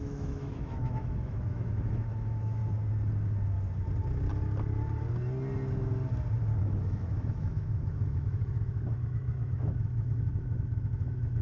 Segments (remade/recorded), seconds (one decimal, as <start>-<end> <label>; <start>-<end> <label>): 0.0-2.6 remade; 2.6-6.6 recorded; 6.6-11.4 remade